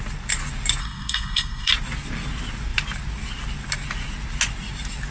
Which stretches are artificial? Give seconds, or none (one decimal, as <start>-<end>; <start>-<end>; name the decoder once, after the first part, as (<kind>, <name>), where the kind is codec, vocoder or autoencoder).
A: 0.8-1.7 (codec, SNAC)